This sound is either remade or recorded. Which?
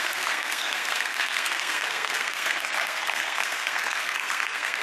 remade